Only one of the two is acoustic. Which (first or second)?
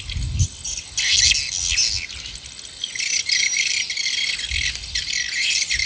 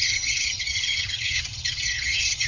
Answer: first